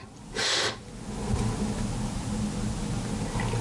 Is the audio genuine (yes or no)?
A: yes